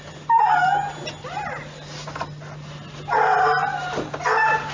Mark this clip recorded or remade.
recorded